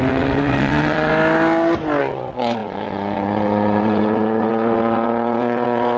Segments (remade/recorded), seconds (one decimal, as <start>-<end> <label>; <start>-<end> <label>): 0.0-1.1 remade; 1.1-2.0 recorded; 2.0-6.0 remade